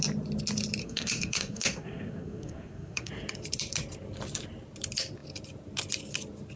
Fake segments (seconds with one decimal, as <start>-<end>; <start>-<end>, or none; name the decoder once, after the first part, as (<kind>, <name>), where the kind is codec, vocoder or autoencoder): 0.8-3.1 (codec, SNAC)